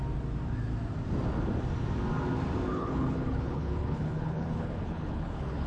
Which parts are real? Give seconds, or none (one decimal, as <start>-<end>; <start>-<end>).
0.0-2.7